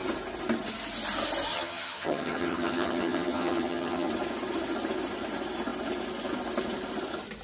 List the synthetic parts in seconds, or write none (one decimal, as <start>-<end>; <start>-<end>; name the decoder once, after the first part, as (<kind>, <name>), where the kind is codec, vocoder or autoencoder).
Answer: 1.5-4.1 (vocoder, HiFi-GAN)